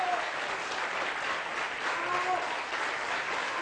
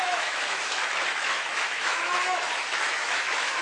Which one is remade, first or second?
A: second